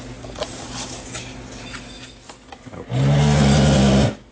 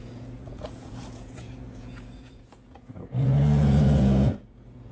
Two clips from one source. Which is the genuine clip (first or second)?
first